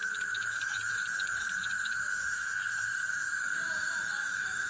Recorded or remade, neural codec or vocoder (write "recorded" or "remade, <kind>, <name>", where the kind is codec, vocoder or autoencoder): remade, autoencoder, DAC-VAE